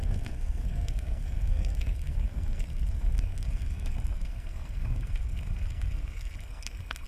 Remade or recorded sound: remade